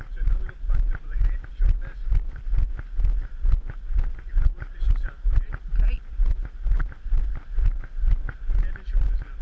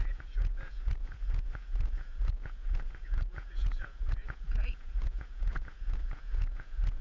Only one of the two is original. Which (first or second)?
first